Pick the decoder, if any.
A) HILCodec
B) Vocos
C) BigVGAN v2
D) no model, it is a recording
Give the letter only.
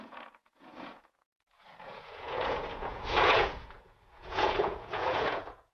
B